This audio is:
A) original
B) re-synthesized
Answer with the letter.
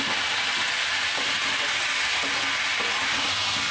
A